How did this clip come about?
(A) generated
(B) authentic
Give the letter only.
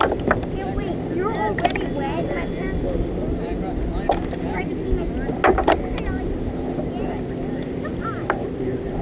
B